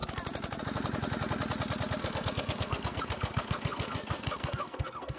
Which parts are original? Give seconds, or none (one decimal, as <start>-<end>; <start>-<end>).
0.0-2.0